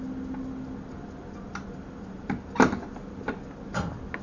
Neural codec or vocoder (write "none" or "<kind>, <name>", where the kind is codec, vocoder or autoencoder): none